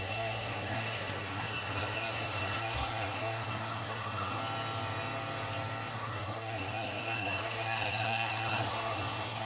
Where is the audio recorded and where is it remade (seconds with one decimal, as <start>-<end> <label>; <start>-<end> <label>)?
0.0-4.4 remade; 4.4-5.9 recorded; 5.9-9.5 remade